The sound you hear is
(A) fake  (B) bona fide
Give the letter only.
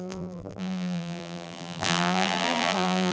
A